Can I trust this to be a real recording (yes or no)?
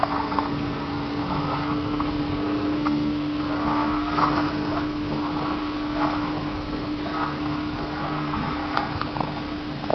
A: no